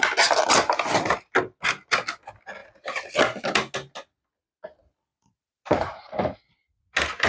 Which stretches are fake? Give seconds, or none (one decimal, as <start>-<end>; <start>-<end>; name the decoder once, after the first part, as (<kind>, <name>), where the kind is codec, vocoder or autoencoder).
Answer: 5.1-6.5 (vocoder, BigVGAN v2)